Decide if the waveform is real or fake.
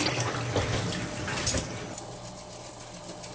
real